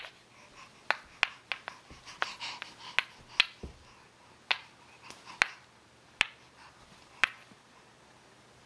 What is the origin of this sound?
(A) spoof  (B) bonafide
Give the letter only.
B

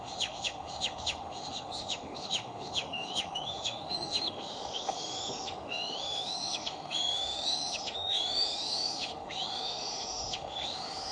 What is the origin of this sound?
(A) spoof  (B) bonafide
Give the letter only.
A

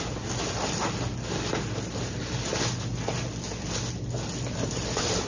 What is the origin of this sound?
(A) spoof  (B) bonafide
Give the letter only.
B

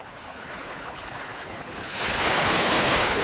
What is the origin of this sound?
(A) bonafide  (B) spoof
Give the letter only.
B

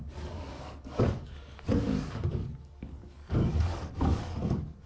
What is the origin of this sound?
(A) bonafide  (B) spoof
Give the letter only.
B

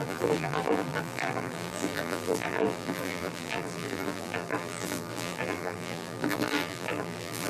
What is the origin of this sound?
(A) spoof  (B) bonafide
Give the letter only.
A